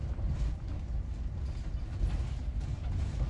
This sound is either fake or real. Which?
real